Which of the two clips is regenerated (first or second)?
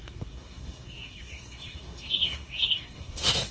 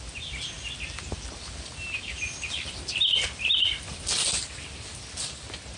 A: first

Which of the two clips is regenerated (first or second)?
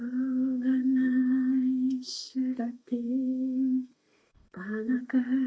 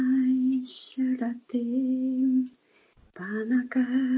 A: first